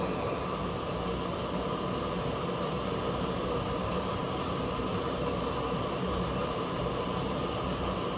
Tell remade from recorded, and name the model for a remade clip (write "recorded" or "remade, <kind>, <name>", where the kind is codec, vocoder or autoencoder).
remade, vocoder, BigVGAN v2